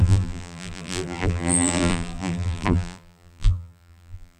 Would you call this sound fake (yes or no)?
yes